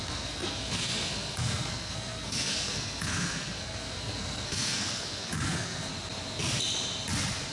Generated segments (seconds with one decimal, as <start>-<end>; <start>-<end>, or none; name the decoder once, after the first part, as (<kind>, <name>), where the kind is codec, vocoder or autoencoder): 0.0-5.9 (codec, SNAC)